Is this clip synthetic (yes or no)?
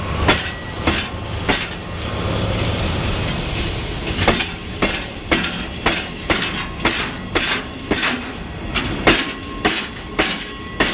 no